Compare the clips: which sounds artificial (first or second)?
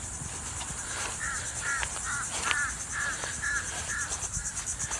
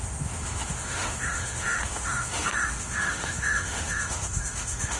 second